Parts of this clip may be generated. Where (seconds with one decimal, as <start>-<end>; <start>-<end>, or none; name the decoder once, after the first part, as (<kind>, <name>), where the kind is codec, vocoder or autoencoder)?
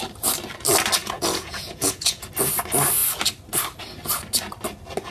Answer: 1.0-2.3 (vocoder, Vocos)